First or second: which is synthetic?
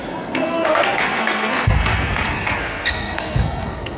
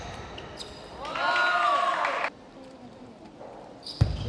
first